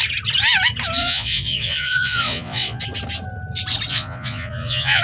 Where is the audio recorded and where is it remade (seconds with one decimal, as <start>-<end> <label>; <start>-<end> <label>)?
0.0-1.0 recorded; 1.0-2.8 remade; 2.8-3.9 recorded; 3.9-5.0 remade